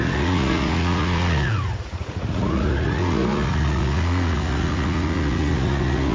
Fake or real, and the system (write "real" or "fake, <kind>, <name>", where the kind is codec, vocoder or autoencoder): fake, vocoder, Vocos